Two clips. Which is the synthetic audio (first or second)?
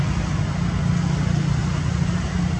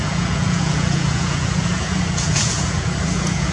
second